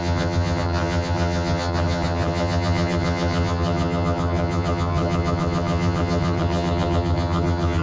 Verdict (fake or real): fake